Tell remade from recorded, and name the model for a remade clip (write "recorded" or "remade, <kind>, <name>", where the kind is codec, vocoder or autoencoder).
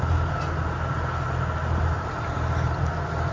recorded